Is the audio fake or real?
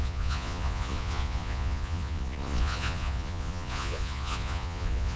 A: fake